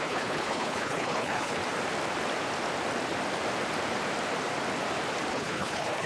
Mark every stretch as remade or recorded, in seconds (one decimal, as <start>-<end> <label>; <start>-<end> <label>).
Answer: 0.0-1.6 remade; 1.6-5.3 recorded; 5.3-6.1 remade